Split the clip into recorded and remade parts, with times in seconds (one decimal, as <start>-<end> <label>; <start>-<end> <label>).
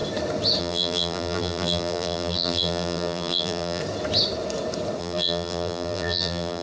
0.0-0.6 recorded; 0.6-3.8 remade; 3.8-5.0 recorded; 5.0-6.6 remade